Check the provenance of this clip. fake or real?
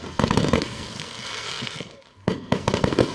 fake